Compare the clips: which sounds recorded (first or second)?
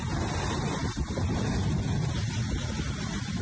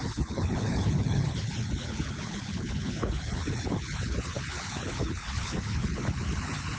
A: first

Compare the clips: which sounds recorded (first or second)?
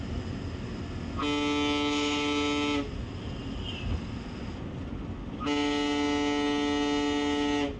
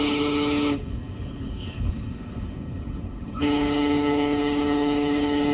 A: first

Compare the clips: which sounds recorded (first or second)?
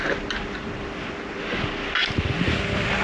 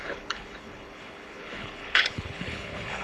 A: first